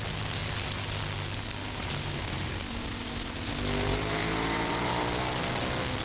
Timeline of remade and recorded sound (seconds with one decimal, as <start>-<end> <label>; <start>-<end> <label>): 0.0-1.6 recorded; 1.6-3.5 remade; 3.5-3.9 recorded; 3.9-4.9 remade; 4.9-6.0 recorded